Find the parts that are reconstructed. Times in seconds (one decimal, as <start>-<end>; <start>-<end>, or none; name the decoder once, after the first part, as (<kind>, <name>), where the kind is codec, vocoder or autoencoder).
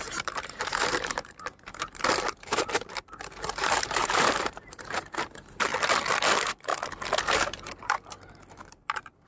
0.0-5.7 (vocoder, BigVGAN v2); 6.3-6.7; 7.2-9.3